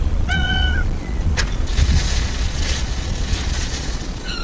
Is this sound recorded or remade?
remade